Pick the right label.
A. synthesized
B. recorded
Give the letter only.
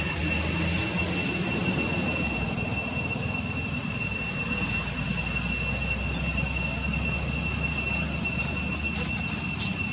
B